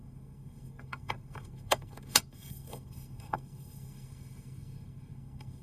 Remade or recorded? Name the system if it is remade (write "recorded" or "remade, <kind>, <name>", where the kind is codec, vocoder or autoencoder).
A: remade, codec, SNAC